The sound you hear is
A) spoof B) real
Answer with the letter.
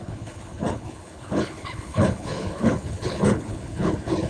A